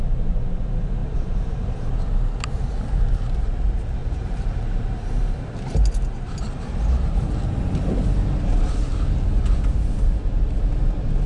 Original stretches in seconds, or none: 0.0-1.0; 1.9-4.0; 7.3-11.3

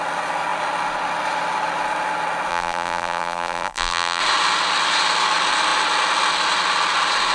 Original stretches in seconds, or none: 0.0-2.5; 4.2-7.3

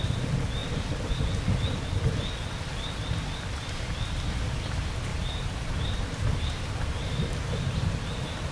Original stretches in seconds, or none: 0.0-5.1

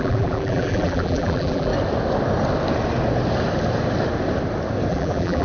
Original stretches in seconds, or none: 1.7-4.9

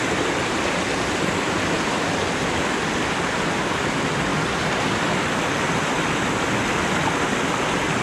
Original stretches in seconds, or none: 0.0-8.0

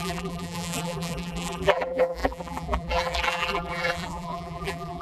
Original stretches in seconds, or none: none

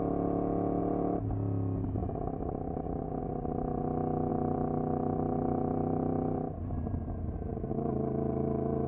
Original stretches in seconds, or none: 0.0-0.8; 1.3-4.3

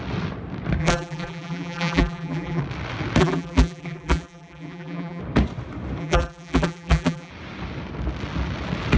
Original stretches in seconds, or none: 0.0-0.8; 2.6-3.2; 5.2-6.0; 7.3-9.0